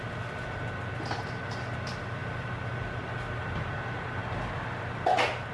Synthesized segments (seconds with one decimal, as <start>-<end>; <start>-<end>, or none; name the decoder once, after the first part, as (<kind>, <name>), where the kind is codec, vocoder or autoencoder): none